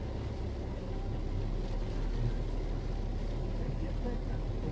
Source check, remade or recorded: recorded